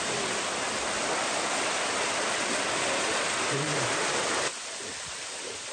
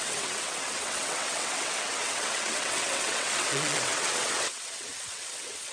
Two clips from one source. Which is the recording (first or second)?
first